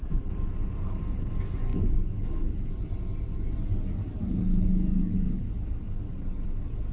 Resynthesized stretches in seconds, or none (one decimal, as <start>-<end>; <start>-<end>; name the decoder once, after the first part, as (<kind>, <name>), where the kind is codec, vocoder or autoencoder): 1.7-2.7 (codec, DAC); 4.0-5.5